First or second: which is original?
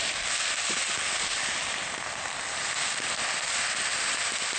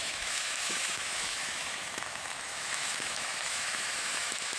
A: first